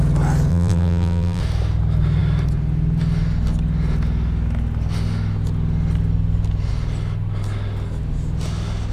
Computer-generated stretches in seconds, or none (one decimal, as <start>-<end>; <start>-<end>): 0.5-1.4